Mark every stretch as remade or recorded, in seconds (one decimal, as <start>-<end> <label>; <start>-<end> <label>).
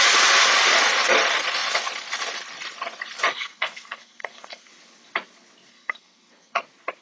0.0-3.3 recorded; 3.3-4.7 remade; 4.7-5.7 recorded; 5.7-6.6 remade; 6.6-7.0 recorded